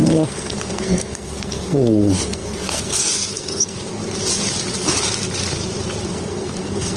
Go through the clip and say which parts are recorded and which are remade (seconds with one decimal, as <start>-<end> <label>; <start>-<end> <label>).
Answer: 0.0-4.0 remade; 4.0-6.1 recorded; 6.1-7.0 remade